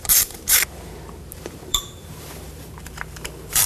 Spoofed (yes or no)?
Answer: yes